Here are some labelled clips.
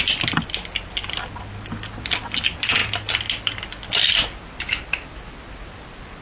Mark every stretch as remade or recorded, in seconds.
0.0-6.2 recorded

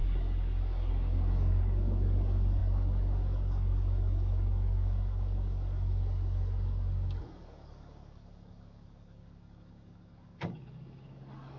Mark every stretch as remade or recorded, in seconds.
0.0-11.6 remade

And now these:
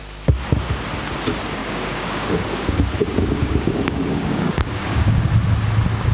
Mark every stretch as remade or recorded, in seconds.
0.0-1.6 recorded; 1.6-5.3 remade; 5.3-6.1 recorded

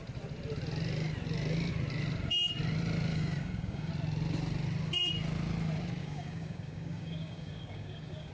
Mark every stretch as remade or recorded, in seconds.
0.0-3.1 recorded; 3.1-3.9 remade; 3.9-6.0 recorded; 6.0-8.3 remade

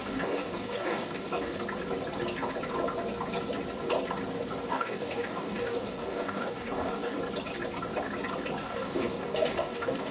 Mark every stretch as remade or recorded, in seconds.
0.0-1.6 remade; 1.6-4.7 recorded; 4.7-7.2 remade; 7.2-8.6 recorded; 8.6-10.1 remade